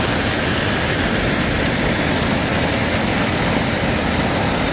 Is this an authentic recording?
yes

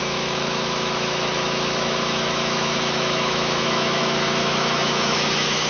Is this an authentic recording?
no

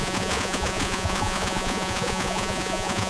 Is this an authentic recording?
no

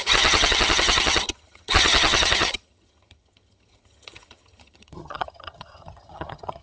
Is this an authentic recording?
no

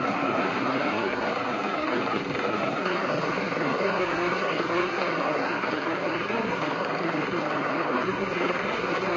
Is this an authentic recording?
no